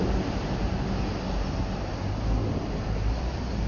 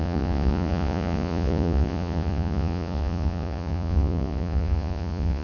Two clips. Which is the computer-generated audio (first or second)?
second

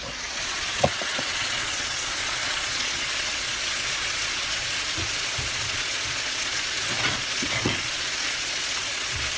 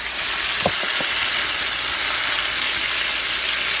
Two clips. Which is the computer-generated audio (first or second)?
first